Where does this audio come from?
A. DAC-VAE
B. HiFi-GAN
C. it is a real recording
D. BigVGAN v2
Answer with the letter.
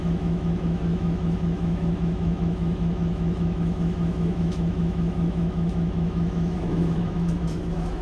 A